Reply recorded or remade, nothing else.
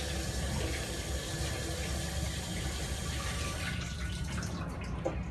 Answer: recorded